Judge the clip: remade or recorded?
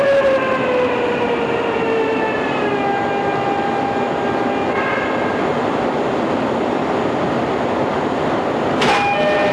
recorded